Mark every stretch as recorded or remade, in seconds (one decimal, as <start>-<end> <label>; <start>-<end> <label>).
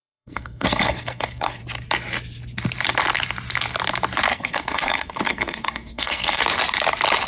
0.0-1.6 remade; 1.6-4.3 recorded; 4.3-6.4 remade; 6.4-7.3 recorded